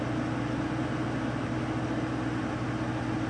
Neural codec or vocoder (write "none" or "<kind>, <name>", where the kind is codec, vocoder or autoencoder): none